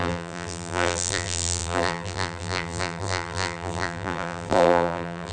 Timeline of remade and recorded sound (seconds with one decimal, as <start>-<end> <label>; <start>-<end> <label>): 0.0-5.3 remade